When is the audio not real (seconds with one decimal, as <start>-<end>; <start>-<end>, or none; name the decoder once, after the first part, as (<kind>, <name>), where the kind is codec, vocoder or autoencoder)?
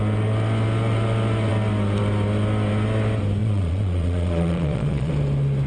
3.4-5.1 (vocoder, Vocos)